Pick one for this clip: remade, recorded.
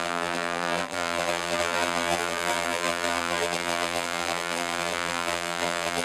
remade